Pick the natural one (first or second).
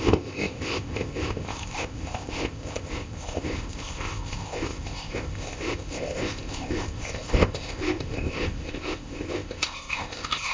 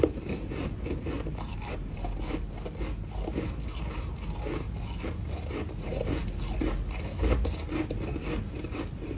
second